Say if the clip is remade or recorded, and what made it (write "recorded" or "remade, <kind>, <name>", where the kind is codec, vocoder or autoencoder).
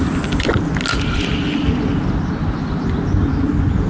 recorded